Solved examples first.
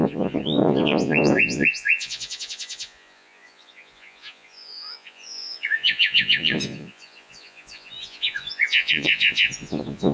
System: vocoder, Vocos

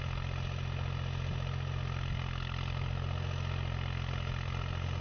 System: none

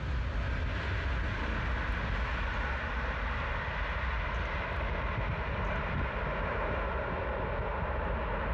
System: none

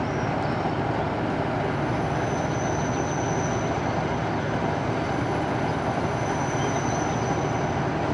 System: none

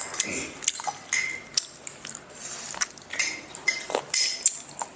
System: none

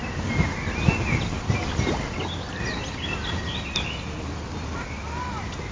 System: none